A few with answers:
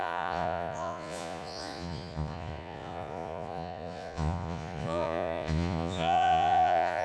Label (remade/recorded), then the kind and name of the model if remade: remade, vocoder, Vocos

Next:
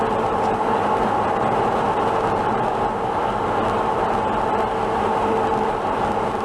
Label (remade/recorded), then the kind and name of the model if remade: recorded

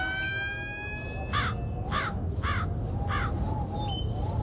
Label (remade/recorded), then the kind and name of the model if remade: recorded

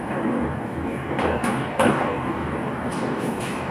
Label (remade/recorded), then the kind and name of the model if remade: remade, codec, DAC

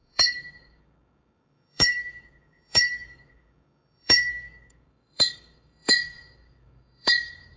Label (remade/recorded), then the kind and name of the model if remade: remade, codec, DAC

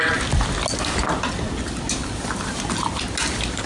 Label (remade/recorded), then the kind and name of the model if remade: recorded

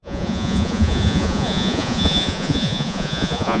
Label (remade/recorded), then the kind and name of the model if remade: remade, vocoder, Vocos